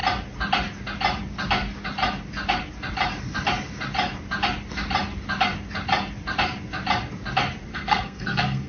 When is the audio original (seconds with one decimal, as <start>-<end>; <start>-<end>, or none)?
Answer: 0.0-7.7